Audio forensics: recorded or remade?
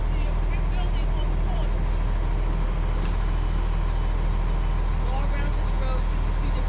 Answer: recorded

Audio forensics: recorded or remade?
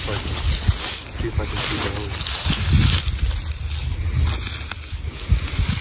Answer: recorded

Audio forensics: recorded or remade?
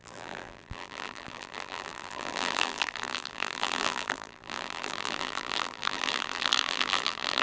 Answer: remade